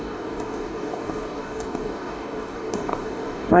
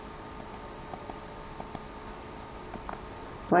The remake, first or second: first